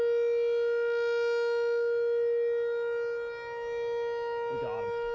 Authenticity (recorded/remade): recorded